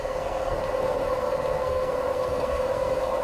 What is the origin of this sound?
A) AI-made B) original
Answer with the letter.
A